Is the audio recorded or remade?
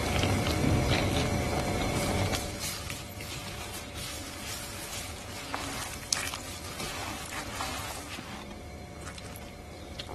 recorded